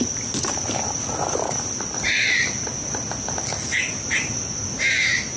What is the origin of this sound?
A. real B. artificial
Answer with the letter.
A